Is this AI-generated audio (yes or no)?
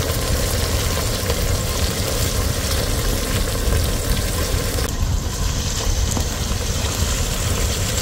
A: no